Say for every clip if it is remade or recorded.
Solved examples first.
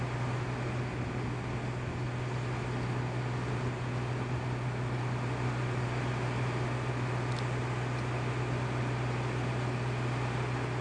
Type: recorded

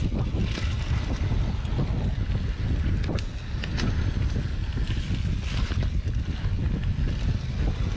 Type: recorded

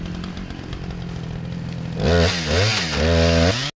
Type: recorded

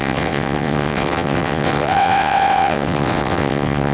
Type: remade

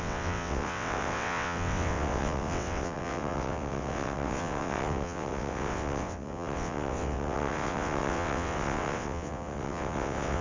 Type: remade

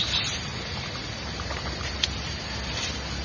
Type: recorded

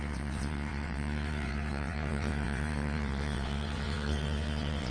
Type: remade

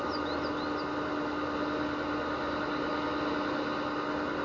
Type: recorded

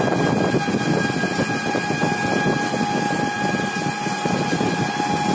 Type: recorded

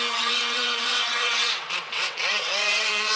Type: remade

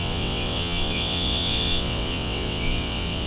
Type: remade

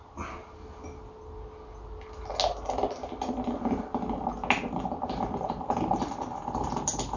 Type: recorded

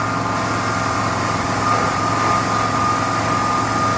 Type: recorded